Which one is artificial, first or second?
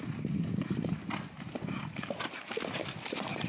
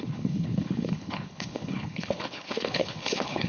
second